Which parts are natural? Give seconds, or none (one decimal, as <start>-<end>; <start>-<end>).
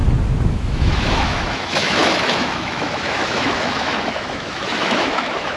0.0-0.5